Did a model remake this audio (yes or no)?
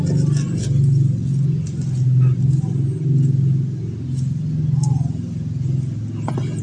no